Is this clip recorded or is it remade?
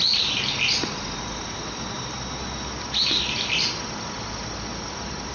recorded